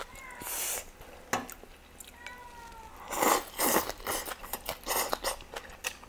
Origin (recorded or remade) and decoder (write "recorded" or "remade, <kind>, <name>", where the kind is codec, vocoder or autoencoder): recorded